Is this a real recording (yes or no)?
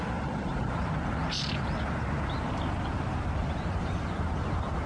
yes